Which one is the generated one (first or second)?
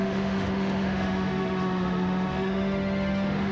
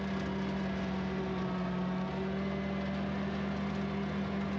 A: first